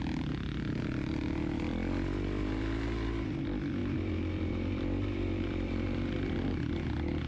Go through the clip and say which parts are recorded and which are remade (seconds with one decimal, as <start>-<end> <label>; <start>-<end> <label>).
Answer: 0.0-3.8 recorded; 3.8-6.6 remade; 6.6-7.3 recorded